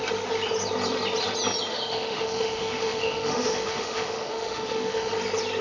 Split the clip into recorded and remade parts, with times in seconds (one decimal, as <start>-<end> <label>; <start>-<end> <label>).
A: 0.0-1.7 recorded; 1.7-5.1 remade; 5.1-5.6 recorded